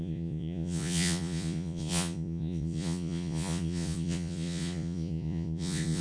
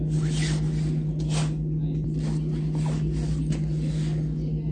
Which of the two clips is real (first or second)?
second